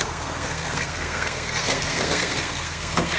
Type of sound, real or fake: fake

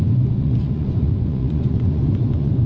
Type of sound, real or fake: fake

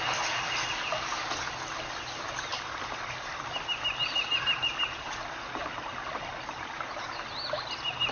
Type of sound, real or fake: real